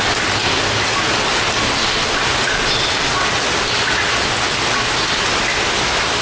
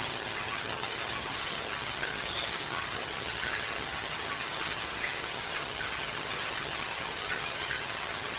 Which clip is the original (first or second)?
first